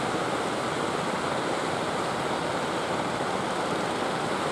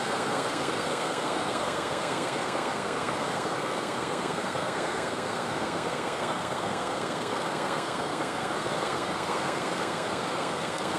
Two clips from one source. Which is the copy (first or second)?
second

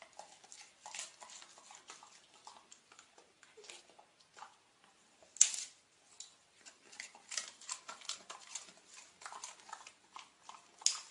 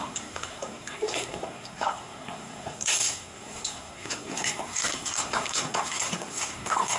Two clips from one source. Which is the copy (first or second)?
second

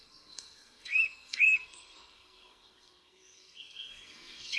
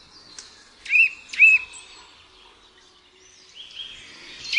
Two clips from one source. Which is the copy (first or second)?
first